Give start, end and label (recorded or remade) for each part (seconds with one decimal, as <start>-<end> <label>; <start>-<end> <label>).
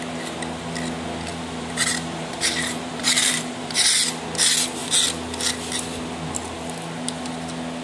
0.0-1.3 recorded; 1.3-3.9 remade; 3.9-7.8 recorded